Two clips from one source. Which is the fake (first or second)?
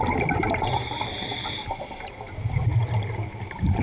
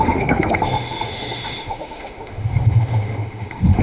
second